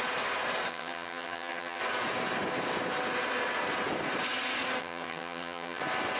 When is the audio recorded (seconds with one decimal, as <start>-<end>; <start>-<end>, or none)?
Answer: 0.0-0.7; 1.8-4.8; 5.8-6.2